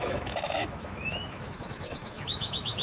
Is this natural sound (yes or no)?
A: no